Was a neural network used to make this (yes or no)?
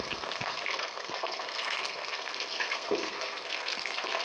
yes